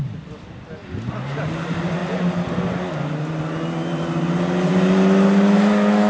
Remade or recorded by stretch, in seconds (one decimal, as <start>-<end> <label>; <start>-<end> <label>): 0.0-6.1 recorded